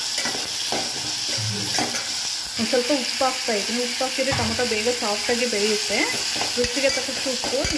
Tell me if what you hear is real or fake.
real